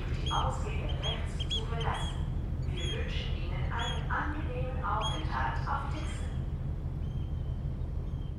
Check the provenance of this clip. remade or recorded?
recorded